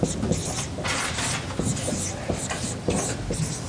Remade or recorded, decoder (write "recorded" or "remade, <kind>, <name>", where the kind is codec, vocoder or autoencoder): recorded